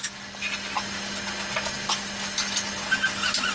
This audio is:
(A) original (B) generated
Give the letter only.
A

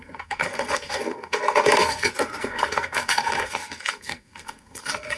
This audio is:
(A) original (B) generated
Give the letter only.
B